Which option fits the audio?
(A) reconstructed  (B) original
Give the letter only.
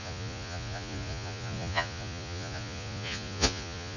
A